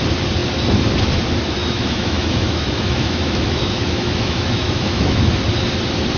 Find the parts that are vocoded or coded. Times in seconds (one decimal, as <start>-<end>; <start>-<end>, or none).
1.6-5.3